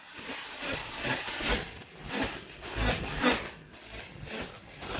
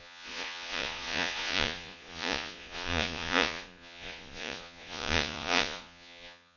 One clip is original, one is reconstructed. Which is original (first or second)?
first